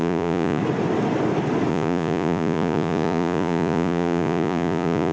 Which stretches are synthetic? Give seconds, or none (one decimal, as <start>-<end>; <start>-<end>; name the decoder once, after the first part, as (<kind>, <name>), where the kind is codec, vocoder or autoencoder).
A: 0.0-0.6 (vocoder, Vocos); 1.7-5.1